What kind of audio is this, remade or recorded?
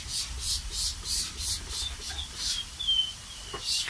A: recorded